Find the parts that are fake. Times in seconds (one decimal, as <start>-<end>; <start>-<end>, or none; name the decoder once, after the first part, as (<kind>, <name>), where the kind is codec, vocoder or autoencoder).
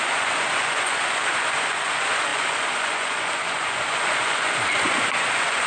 0.0-5.7 (vocoder, Vocos)